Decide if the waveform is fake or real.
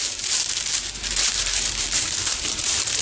fake